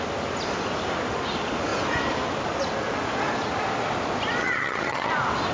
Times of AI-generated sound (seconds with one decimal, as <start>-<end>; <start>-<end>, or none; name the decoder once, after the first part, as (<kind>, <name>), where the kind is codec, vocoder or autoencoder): 4.4-5.1 (vocoder, HiFi-GAN)